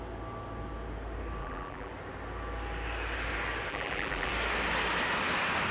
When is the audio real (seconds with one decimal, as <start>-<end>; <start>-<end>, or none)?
0.0-1.4; 1.9-3.7; 4.3-5.7